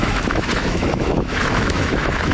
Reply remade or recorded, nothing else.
remade